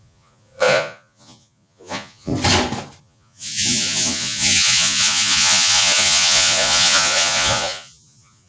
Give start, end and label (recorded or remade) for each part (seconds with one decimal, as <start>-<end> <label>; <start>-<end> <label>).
0.0-2.3 remade; 2.3-3.0 recorded; 3.0-8.5 remade